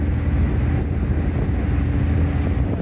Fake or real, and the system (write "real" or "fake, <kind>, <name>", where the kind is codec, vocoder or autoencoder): real